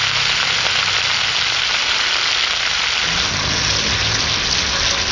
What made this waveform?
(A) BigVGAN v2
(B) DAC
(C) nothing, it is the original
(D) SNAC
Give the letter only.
C